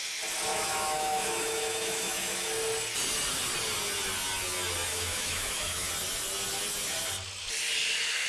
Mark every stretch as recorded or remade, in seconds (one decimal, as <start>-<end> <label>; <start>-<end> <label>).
0.0-0.5 recorded; 0.5-2.5 remade; 2.5-4.9 recorded; 4.9-5.9 remade; 5.9-8.3 recorded